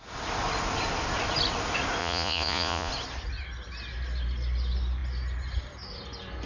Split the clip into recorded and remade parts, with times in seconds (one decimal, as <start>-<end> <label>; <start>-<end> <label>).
0.0-2.0 recorded; 2.0-2.9 remade; 2.9-6.5 recorded